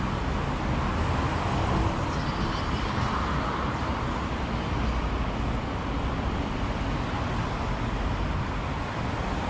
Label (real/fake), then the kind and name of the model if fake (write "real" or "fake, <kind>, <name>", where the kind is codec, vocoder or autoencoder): real